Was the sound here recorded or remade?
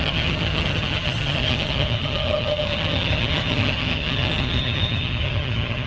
remade